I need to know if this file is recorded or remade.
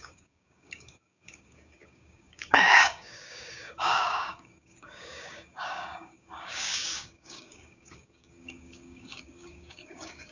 remade